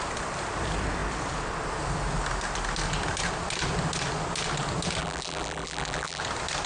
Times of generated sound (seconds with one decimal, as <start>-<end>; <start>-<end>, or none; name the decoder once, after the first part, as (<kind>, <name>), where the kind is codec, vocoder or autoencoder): 5.0-6.2 (vocoder, BigVGAN v2)

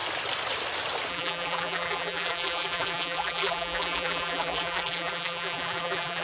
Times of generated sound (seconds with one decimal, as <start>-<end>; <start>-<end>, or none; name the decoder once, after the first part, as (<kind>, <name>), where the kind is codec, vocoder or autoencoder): 1.1-6.2 (vocoder, BigVGAN v2)

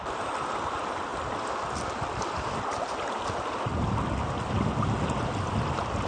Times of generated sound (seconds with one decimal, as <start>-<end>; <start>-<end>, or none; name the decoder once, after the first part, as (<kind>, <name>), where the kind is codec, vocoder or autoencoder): none

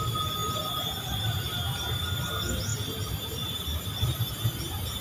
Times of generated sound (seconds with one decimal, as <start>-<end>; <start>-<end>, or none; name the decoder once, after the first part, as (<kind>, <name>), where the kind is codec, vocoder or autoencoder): 0.0-2.7 (vocoder, BigVGAN v2)

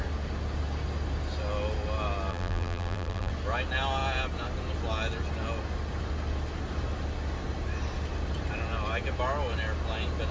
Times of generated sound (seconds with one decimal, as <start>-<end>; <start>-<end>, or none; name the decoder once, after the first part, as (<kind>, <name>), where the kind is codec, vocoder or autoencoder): 2.3-3.3 (vocoder, BigVGAN v2)

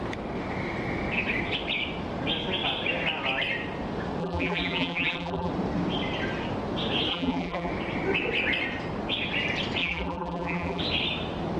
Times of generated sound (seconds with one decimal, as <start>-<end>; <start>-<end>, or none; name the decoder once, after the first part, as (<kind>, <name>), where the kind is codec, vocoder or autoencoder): 4.2-5.5 (vocoder, BigVGAN v2); 7.1-7.7; 9.8-10.8

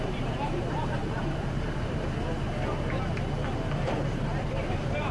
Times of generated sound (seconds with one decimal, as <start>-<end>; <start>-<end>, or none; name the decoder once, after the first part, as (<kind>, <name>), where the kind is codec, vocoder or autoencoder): 0.0-2.2 (vocoder, BigVGAN v2); 4.1-5.1

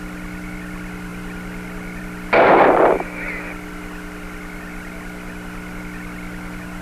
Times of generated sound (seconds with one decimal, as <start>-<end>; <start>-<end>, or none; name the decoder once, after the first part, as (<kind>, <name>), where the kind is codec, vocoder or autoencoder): none